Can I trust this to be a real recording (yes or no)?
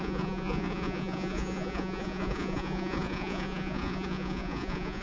no